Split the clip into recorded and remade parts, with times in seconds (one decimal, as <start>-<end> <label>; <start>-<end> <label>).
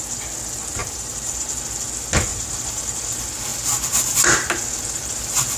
0.0-0.8 recorded; 0.8-1.5 remade; 1.5-2.3 recorded; 2.3-3.1 remade; 3.1-5.6 recorded